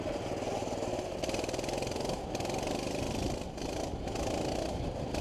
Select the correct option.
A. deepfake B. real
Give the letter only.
B